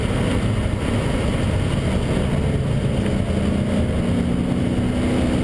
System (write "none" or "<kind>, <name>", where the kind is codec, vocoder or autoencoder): none